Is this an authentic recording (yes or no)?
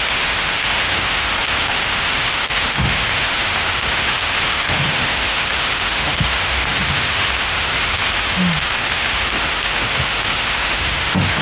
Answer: no